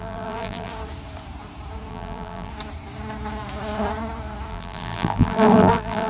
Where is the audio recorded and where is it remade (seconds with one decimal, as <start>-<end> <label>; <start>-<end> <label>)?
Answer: 0.0-0.7 remade; 0.7-1.9 recorded; 1.9-2.5 remade; 2.5-4.5 recorded; 4.5-6.1 remade